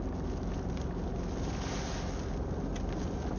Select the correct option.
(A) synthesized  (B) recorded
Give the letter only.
B